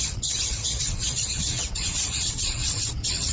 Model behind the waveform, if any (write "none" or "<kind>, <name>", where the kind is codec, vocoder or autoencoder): vocoder, WaveNeXt